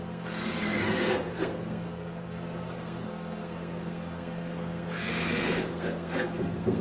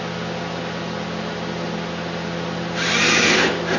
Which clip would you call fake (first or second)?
first